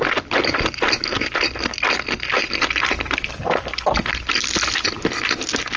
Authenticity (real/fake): real